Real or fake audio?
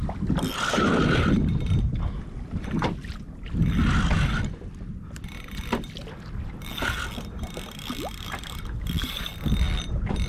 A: real